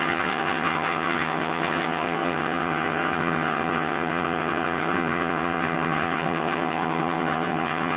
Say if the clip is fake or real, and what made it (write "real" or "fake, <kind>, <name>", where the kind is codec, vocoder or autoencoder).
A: fake, vocoder, HiFi-GAN